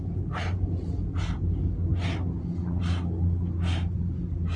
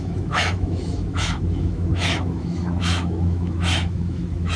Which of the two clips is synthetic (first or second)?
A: second